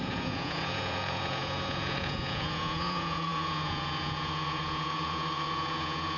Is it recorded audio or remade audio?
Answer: remade